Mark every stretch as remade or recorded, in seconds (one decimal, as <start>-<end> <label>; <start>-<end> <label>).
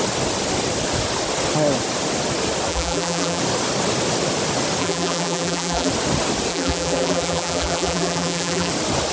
0.0-2.7 recorded; 2.7-3.4 remade; 3.4-4.8 recorded; 4.8-5.9 remade; 5.9-6.5 recorded; 6.5-8.7 remade; 8.7-9.1 recorded